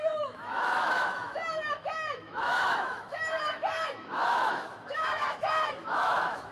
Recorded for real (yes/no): no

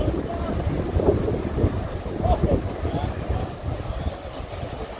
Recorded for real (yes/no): yes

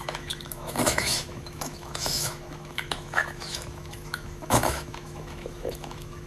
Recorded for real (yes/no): no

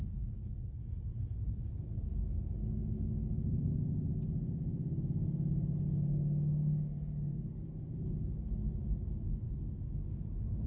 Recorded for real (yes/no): yes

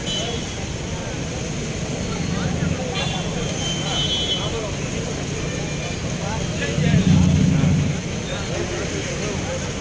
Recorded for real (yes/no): yes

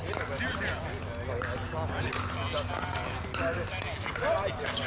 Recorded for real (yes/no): yes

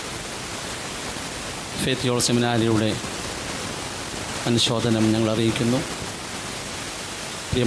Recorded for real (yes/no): yes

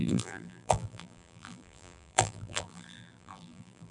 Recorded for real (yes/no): no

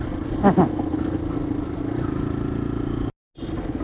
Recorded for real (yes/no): yes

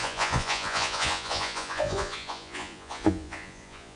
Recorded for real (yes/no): no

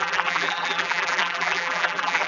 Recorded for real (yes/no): no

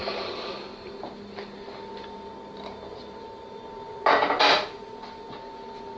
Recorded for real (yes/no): yes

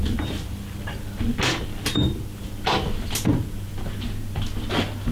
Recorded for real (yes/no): yes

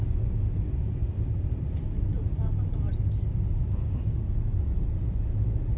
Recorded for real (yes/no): yes